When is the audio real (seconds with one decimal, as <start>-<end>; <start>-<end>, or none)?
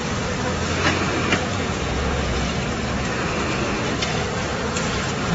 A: 0.0-1.4; 2.5-5.3